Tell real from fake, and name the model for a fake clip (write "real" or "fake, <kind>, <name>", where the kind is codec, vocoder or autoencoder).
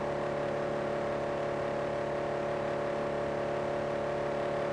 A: real